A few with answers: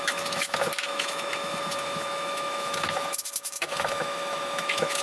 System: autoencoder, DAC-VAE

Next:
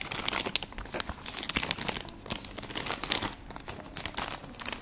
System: none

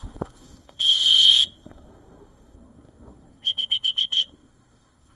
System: codec, SNAC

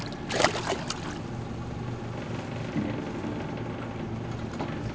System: none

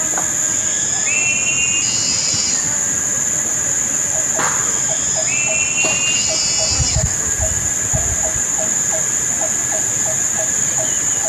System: none